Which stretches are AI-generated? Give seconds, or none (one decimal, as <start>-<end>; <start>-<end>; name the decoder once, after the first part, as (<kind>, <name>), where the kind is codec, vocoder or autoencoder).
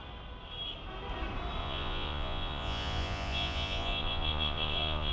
1.6-5.1 (vocoder, Vocos)